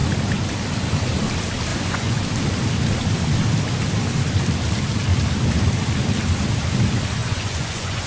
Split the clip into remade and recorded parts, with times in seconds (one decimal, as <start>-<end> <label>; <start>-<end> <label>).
0.0-1.7 recorded; 1.7-2.2 remade; 2.2-7.2 recorded; 7.2-8.1 remade